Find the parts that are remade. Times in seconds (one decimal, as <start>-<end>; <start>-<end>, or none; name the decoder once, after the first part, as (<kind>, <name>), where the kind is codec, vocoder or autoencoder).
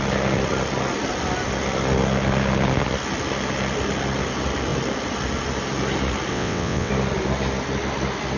6.3-6.9 (vocoder, WaveNeXt)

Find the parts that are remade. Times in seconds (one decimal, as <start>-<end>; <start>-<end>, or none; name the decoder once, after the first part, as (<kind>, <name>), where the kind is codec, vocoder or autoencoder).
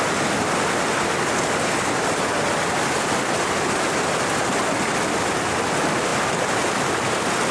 none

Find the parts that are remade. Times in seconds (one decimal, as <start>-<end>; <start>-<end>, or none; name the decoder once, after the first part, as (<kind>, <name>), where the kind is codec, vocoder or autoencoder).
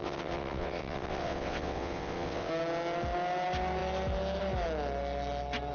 0.0-2.5 (vocoder, WaveNeXt)